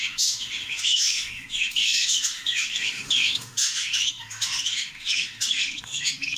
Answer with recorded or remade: remade